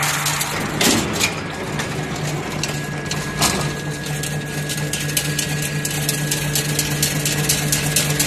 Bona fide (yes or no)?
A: yes